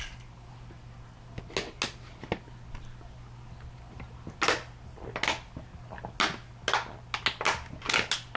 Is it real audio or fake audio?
real